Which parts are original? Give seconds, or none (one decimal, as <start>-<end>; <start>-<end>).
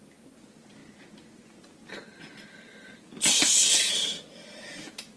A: 0.0-5.2